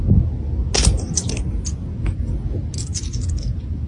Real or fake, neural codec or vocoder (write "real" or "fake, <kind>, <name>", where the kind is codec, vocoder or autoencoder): real